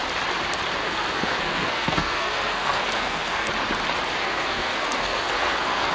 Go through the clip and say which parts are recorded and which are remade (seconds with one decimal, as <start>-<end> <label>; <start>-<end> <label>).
0.0-0.8 recorded; 0.8-3.5 remade; 3.5-4.2 recorded; 4.2-5.9 remade